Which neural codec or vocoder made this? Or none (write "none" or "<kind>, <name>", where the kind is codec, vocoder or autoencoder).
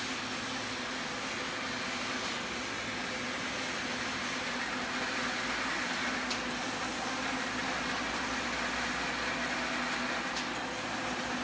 none